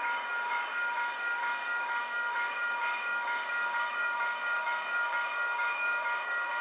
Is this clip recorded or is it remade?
remade